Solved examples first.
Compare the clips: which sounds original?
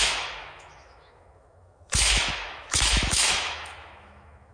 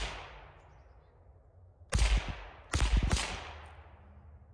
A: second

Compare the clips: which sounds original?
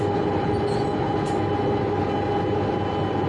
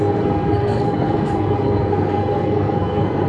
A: first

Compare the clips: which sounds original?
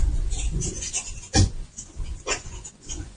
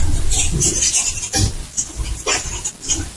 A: second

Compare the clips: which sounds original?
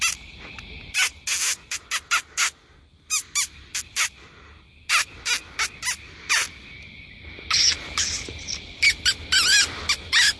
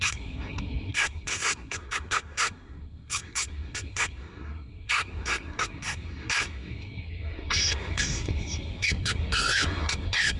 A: first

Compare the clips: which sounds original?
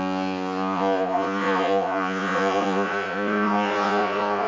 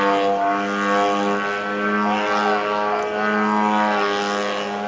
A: second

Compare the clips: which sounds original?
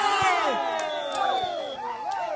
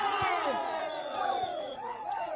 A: first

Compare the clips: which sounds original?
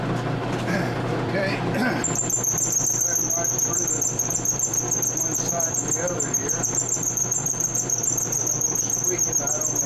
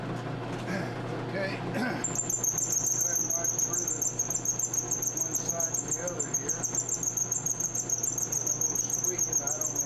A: second